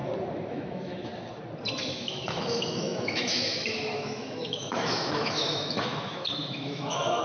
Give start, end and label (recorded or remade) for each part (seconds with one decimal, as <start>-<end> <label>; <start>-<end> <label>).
0.0-0.5 recorded; 0.5-1.1 remade; 1.1-1.9 recorded; 1.9-7.2 remade